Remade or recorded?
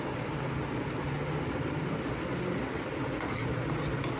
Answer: recorded